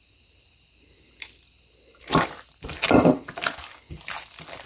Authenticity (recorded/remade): recorded